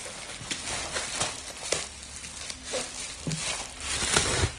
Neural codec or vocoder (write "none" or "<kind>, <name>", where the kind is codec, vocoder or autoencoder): none